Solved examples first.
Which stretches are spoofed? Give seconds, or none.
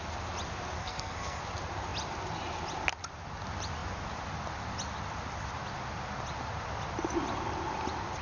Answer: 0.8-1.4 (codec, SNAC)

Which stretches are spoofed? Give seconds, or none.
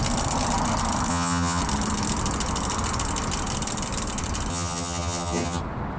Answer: 1.1-1.6 (vocoder, HiFi-GAN); 4.5-5.6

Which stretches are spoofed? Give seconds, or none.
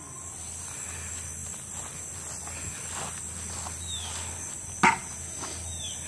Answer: none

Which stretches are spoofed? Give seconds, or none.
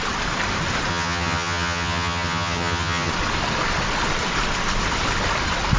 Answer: 0.9-3.1 (vocoder, HiFi-GAN)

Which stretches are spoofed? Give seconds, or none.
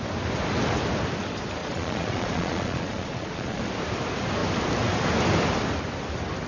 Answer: 1.6-3.6 (vocoder, Vocos)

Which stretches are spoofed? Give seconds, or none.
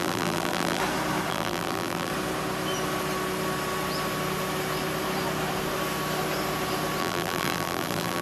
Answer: 0.0-0.8 (vocoder, BigVGAN v2); 1.3-2.1; 7.0-8.2